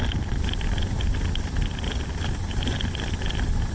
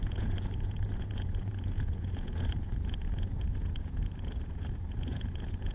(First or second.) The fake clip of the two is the second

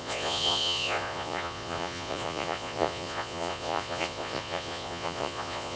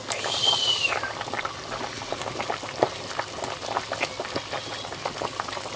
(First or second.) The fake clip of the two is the first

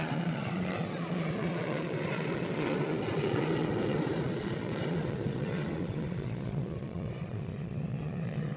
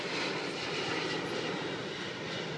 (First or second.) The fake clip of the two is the first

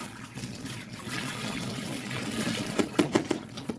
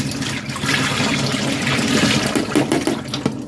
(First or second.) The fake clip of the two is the first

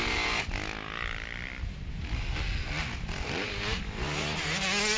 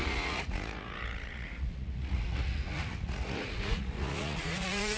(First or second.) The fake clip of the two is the second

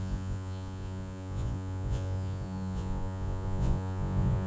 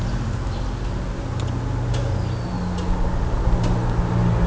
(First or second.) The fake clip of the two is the first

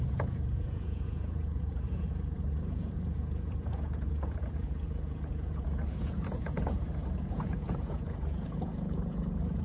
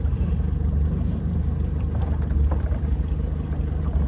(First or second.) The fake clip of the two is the first